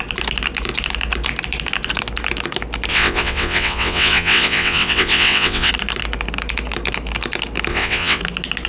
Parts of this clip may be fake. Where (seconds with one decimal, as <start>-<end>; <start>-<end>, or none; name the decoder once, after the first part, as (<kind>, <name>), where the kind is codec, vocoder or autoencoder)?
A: 2.9-5.7 (vocoder, WaveNeXt); 7.7-8.2